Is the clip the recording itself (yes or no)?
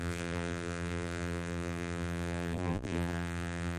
no